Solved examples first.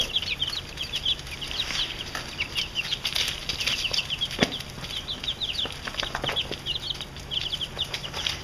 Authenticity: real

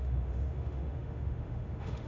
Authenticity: fake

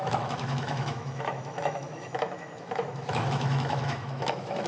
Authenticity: fake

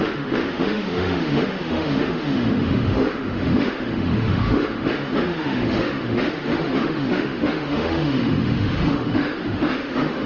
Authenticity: fake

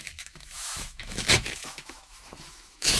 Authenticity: fake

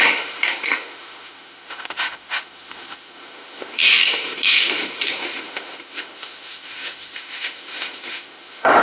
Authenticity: fake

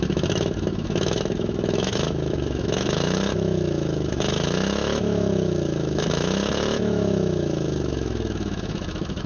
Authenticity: fake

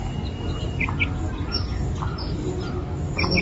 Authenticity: real